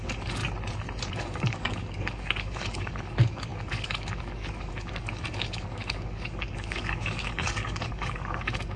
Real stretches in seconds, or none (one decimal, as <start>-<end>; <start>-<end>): 0.4-1.1